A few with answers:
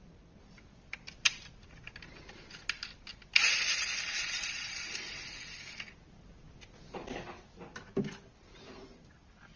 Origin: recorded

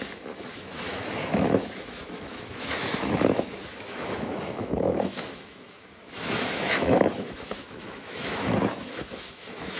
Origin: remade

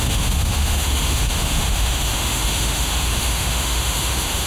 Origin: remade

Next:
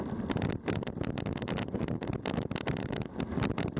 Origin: recorded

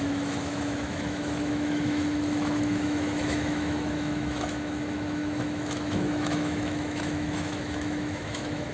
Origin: remade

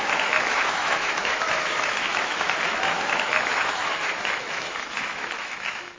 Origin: remade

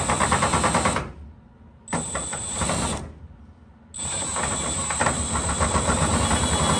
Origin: recorded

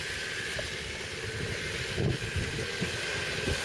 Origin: recorded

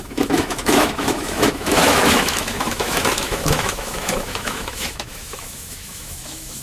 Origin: remade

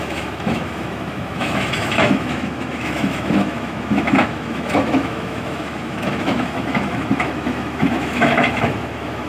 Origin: remade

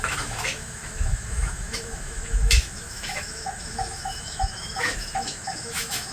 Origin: remade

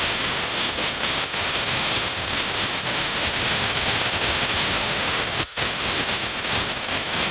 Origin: remade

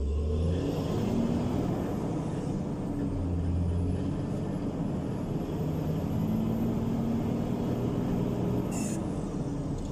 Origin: recorded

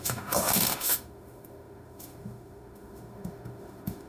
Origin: remade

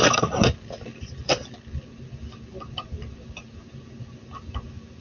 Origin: recorded